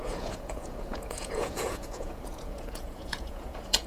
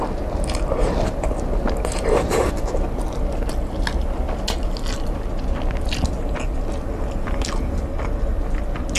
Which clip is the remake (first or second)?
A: first